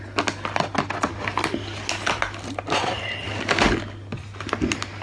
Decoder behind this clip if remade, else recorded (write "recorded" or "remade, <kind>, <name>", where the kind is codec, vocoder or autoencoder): recorded